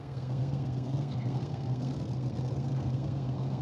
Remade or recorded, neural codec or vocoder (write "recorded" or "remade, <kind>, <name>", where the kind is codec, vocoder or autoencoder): remade, codec, SNAC